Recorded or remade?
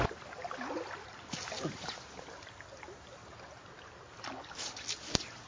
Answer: recorded